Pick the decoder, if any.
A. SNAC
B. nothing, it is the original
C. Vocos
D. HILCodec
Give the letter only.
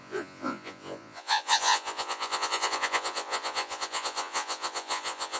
C